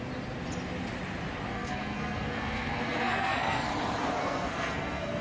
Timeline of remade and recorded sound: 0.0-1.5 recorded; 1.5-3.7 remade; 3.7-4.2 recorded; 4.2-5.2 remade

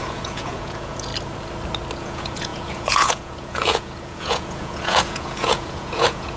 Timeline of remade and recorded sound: 0.0-1.1 remade; 1.1-2.0 recorded; 2.0-6.4 remade

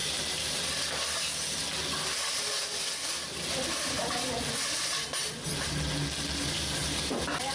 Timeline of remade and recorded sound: 0.0-0.6 remade; 0.6-7.5 recorded

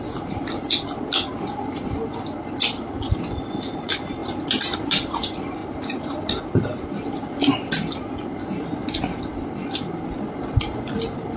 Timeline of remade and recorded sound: 0.0-4.2 recorded; 4.2-4.9 remade; 4.9-5.6 recorded; 5.6-7.3 remade; 7.3-11.4 recorded